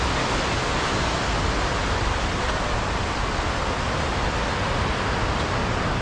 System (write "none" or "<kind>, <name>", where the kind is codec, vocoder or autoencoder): none